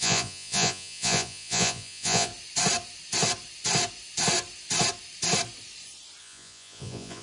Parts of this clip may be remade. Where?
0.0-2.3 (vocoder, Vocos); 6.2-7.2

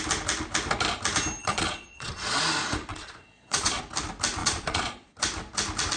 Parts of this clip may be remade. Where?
1.4-2.4 (vocoder, Vocos); 2.9-3.8; 4.4-5.1

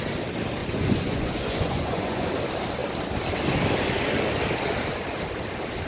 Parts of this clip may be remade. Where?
0.6-2.3 (vocoder, Vocos)

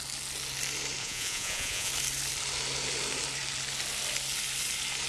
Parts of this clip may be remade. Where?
1.0-1.9 (vocoder, Vocos)